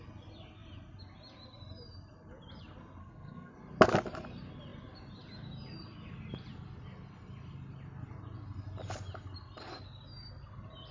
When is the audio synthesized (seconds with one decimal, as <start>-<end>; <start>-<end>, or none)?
3.0-3.5